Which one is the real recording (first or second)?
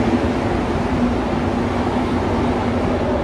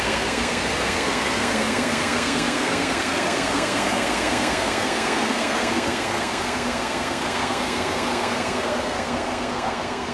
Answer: first